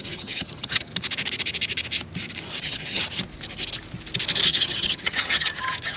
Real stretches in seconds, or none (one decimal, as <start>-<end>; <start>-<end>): 0.9-2.6; 3.0-4.5